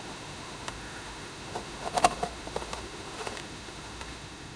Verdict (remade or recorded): remade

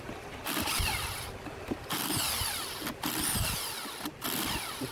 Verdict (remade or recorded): recorded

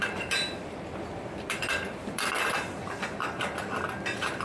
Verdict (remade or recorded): remade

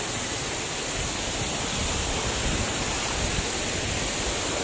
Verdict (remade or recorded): recorded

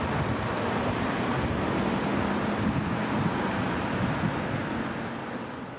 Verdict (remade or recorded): recorded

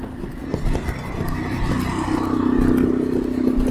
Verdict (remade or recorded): recorded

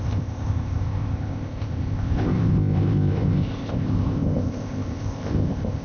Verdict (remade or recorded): remade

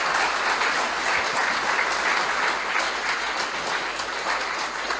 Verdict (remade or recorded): recorded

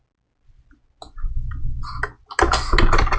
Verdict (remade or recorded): recorded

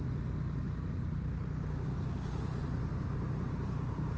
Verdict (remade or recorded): recorded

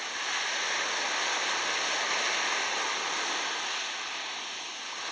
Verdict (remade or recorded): recorded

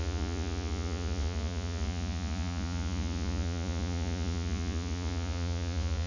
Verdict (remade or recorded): remade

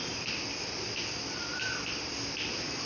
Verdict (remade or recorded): recorded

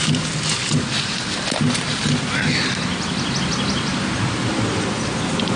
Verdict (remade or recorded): recorded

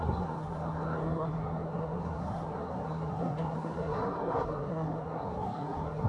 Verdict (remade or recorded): remade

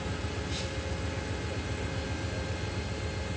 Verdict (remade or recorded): recorded